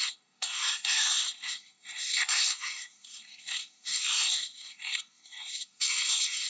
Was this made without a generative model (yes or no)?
no